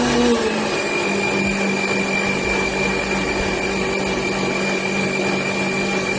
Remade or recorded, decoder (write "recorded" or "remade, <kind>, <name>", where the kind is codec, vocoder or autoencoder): recorded